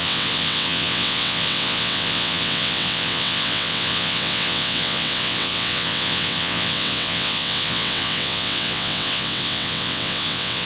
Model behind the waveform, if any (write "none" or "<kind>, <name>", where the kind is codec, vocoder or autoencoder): vocoder, WaveNeXt